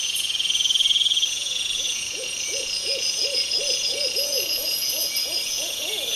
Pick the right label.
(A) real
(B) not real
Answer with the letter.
B